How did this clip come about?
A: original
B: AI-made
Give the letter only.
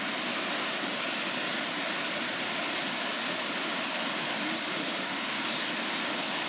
A